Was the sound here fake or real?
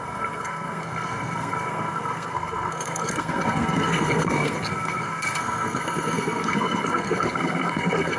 fake